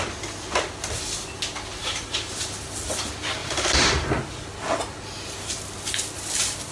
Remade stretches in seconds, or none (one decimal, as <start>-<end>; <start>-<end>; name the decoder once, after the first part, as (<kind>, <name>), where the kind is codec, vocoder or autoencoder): 1.8-2.4 (vocoder, BigVGAN v2); 3.4-4.1